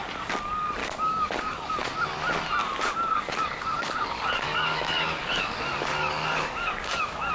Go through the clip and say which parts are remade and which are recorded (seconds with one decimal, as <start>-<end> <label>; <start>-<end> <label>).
0.0-0.8 recorded; 0.8-1.7 remade; 1.7-2.6 recorded; 2.6-7.3 remade